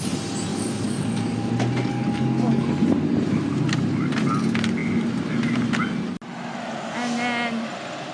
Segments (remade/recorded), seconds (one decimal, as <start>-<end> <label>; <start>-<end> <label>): 0.0-0.5 recorded; 0.5-1.5 remade; 1.5-1.9 recorded; 1.9-2.7 remade; 2.7-8.1 recorded